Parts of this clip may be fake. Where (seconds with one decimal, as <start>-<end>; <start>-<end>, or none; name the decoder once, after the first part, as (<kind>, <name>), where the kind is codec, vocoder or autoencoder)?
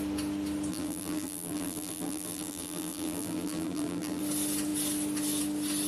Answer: 0.7-4.2 (vocoder, BigVGAN v2)